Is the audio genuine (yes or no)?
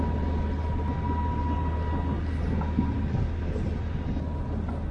yes